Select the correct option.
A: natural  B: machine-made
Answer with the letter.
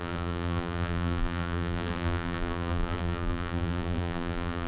B